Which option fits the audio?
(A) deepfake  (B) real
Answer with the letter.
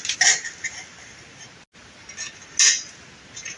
B